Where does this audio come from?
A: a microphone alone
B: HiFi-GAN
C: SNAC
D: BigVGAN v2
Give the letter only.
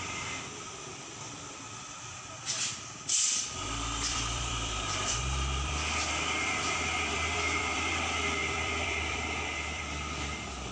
D